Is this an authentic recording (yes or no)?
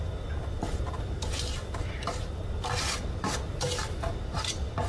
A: yes